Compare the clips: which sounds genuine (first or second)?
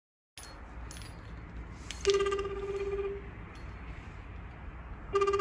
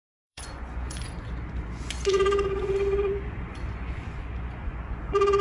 first